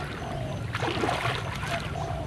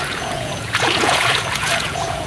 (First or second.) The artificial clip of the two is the second